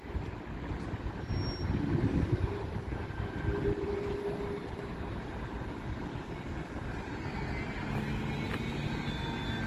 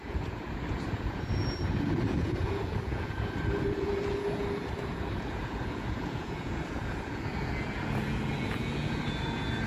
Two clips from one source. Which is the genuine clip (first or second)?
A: first